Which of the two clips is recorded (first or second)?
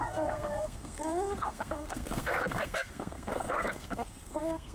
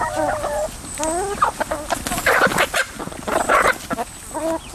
second